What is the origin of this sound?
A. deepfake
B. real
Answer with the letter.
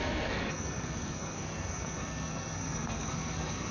A